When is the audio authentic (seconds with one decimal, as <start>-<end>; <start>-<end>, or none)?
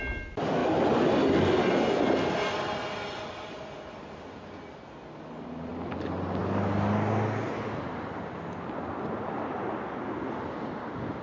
0.0-11.2